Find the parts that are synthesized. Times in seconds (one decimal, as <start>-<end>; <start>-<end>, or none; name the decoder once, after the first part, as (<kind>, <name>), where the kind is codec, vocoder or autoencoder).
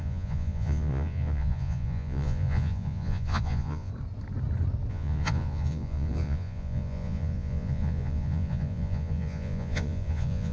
0.0-3.9 (vocoder, Vocos); 4.9-10.5